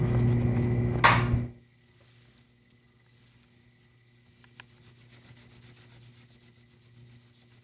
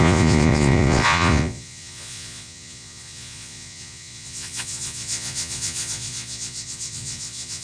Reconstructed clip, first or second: second